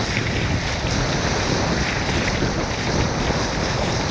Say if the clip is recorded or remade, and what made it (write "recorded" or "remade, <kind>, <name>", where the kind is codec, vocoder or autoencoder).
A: recorded